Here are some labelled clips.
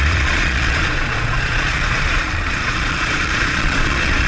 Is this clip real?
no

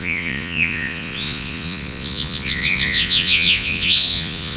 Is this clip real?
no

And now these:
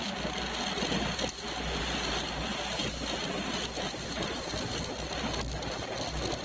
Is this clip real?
yes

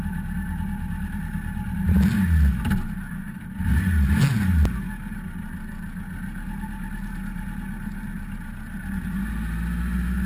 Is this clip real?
yes